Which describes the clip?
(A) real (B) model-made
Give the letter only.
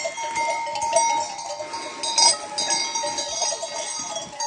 A